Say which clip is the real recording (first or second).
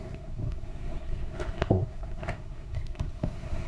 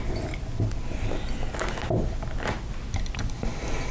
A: second